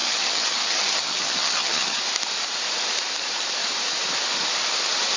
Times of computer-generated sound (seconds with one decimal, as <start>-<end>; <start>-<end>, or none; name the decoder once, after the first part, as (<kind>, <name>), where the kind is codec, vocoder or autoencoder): 0.0-2.0 (vocoder, HiFi-GAN)